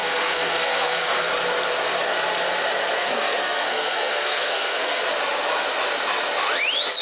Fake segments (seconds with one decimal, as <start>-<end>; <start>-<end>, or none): 0.0-1.3; 3.0-5.0